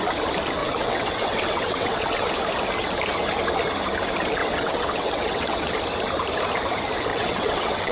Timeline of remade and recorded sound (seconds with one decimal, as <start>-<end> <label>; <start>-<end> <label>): 0.0-0.6 recorded; 0.6-2.3 remade; 2.3-4.4 recorded; 4.4-5.7 remade; 5.7-7.1 recorded; 7.1-7.9 remade